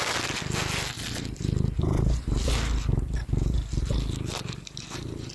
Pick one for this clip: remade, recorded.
recorded